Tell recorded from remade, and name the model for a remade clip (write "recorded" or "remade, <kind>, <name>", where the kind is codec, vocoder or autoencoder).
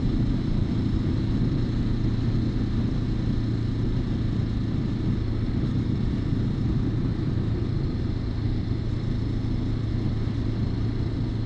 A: recorded